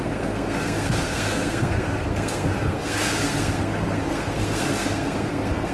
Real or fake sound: fake